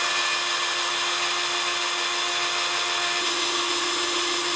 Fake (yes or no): no